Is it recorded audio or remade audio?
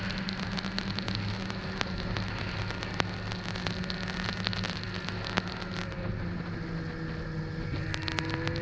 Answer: recorded